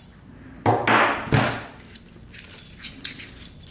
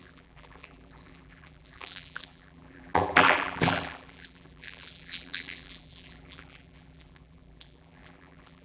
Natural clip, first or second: first